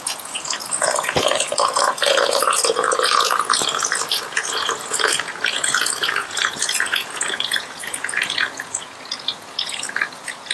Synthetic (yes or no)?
yes